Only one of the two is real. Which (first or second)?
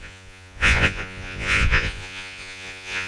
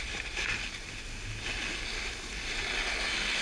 second